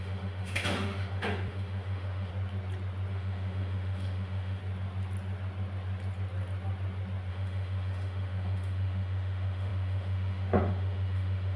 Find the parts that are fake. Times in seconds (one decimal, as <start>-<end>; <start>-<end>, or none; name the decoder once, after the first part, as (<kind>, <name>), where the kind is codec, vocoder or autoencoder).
0.0-2.3 (autoencoder, DAC-VAE); 3.1-4.6; 7.3-11.6